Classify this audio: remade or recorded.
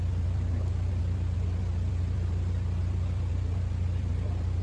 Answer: recorded